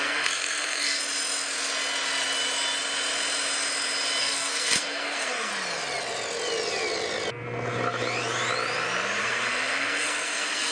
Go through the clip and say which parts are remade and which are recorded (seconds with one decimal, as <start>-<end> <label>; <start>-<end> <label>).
0.0-1.0 remade; 1.0-4.2 recorded; 4.2-5.5 remade; 5.5-9.2 recorded; 9.2-10.7 remade